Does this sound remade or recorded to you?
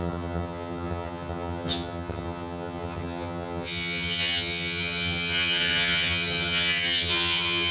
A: remade